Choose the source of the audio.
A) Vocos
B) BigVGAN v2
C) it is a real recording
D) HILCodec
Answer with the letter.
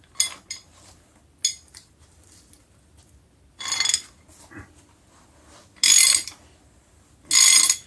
C